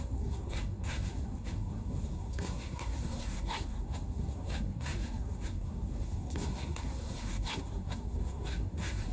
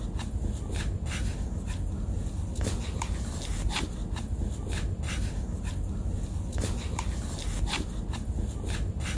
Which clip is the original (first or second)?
second